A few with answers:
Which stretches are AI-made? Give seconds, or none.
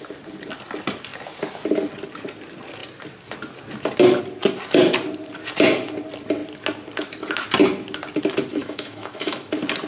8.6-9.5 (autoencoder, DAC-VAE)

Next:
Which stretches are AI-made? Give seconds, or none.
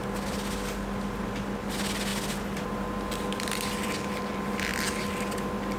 none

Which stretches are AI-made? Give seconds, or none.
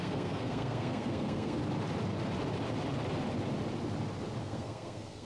0.0-1.6 (codec, SNAC); 4.4-5.3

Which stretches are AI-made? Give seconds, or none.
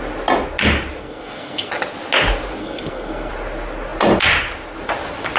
1.0-1.7 (codec, SNAC); 2.6-3.3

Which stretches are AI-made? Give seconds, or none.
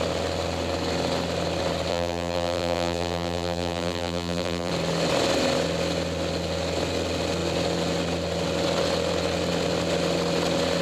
1.9-4.7 (vocoder, BigVGAN v2)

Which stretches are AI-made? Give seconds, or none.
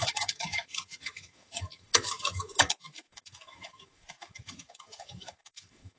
0.0-6.0 (autoencoder, DAC-VAE)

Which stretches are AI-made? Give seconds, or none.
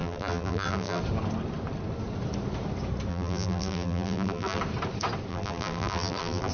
0.0-1.0 (vocoder, BigVGAN v2); 3.1-4.6; 5.3-6.5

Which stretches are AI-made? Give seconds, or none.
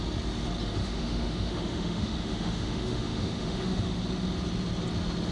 0.8-4.0 (autoencoder, DAC-VAE)